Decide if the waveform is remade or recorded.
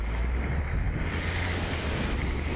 recorded